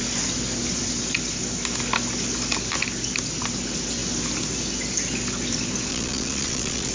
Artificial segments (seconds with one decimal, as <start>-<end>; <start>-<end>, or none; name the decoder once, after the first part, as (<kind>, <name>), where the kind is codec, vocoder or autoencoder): 5.9-6.9 (vocoder, Vocos)

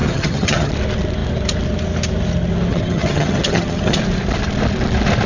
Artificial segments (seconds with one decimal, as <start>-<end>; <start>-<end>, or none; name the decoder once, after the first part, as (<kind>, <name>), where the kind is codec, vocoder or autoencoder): 0.0-0.7 (vocoder, HiFi-GAN); 2.7-4.0

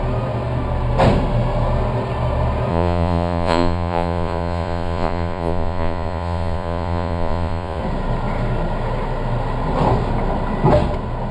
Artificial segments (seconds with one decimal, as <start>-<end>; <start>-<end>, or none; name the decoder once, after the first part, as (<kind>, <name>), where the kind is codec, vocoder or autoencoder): 2.7-7.8 (vocoder, Vocos)

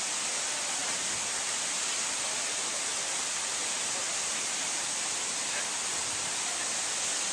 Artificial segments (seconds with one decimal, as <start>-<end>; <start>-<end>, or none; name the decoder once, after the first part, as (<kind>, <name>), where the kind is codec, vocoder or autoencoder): none

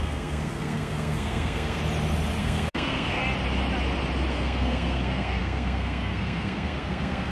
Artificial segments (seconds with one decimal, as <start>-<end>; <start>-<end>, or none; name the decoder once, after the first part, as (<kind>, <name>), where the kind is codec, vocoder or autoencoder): 0.0-1.8 (codec, SNAC); 2.4-3.2; 4.3-7.3

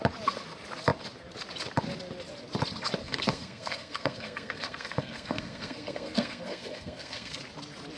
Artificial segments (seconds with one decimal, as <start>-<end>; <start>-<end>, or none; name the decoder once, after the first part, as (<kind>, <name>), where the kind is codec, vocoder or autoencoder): 3.0-7.4 (codec, SNAC)

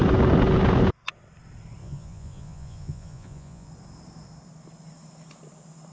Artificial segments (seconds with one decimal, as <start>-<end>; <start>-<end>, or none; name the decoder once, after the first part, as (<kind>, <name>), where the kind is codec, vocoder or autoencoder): 1.8-3.7 (vocoder, Vocos)

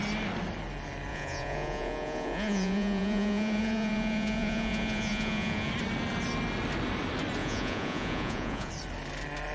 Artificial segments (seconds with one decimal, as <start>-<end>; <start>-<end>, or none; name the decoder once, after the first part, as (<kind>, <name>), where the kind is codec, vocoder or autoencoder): 1.1-5.7 (vocoder, Vocos); 7.4-8.7